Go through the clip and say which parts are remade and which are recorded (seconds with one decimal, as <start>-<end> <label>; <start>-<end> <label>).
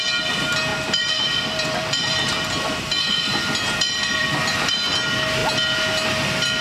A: 0.0-0.7 recorded; 0.7-4.7 remade; 4.7-6.6 recorded